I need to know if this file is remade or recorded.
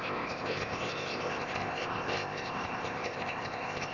remade